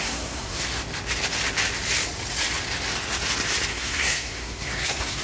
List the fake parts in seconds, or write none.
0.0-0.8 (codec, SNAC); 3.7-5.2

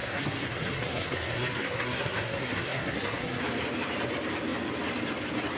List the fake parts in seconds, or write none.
0.0-3.4 (codec, SNAC)

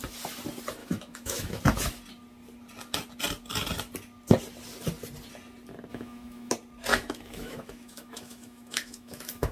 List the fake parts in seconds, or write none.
0.8-1.6 (autoencoder, DAC-VAE); 5.9-6.5; 6.9-9.5

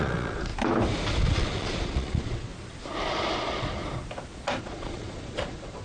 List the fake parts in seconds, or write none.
0.0-0.5 (vocoder, Vocos); 1.3-2.5; 3.1-3.8; 4.6-5.8

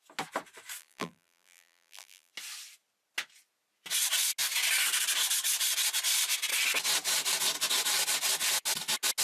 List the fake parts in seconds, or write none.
0.8-2.3 (vocoder, BigVGAN v2)

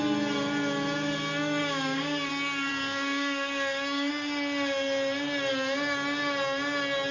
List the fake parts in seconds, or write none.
1.6-2.3 (codec, DAC); 2.7-4.1

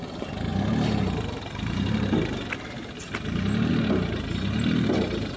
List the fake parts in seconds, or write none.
none

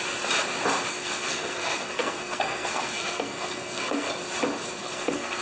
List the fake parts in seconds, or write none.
0.9-4.1 (codec, SNAC); 4.8-5.4